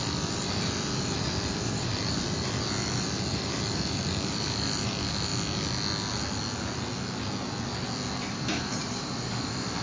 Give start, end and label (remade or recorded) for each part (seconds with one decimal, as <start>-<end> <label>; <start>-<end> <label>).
0.0-5.3 remade; 5.3-8.2 recorded; 8.2-9.8 remade